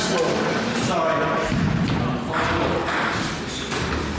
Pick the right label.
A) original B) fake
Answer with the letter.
A